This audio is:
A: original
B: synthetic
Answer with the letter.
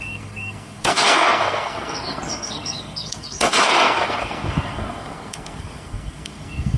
B